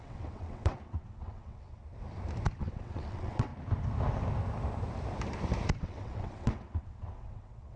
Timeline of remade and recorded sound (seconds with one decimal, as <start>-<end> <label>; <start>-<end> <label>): 0.0-1.8 remade; 1.8-2.6 recorded; 2.6-3.5 remade; 3.5-5.8 recorded; 5.8-7.8 remade